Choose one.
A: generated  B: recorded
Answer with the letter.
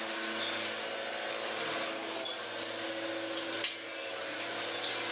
B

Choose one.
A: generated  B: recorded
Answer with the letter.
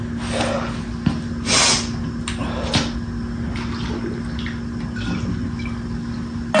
B